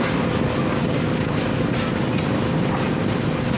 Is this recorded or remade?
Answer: recorded